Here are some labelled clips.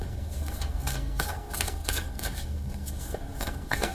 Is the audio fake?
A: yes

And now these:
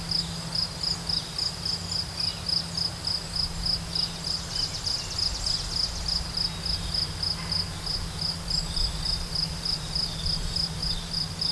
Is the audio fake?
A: no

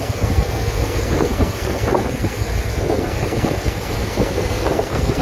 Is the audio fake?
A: yes